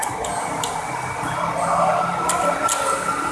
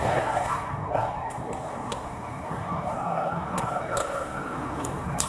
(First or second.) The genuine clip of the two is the first